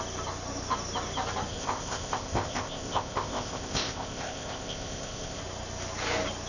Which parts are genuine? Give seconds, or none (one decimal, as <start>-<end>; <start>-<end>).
0.0-1.5; 5.4-6.5